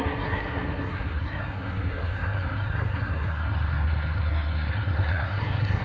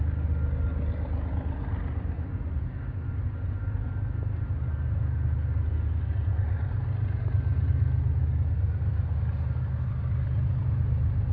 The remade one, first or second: first